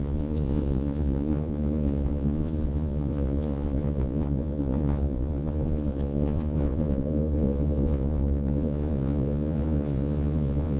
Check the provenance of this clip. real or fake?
fake